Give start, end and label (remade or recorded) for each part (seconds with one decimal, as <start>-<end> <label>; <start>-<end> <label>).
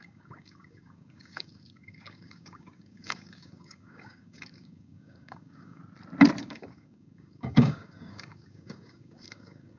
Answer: 0.0-5.8 remade; 5.8-6.4 recorded; 6.4-9.8 remade